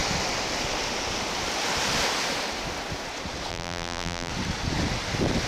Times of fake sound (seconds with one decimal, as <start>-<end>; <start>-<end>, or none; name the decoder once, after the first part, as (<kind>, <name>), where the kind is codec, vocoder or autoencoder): 3.5-4.3 (vocoder, BigVGAN v2)